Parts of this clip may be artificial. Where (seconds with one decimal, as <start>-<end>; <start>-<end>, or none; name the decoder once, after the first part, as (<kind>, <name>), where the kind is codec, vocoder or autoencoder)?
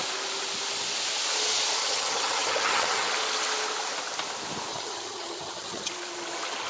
1.8-3.1 (vocoder, HiFi-GAN); 4.7-5.9